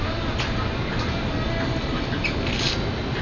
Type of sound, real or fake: real